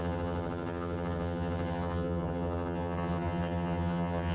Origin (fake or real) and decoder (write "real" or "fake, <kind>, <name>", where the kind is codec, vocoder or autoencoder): fake, vocoder, HiFi-GAN